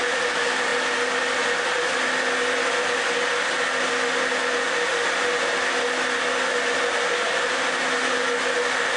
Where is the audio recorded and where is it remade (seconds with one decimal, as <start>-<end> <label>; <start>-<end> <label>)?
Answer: 0.0-9.0 recorded